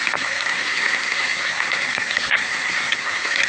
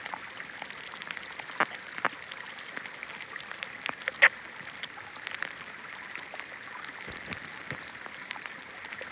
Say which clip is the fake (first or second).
first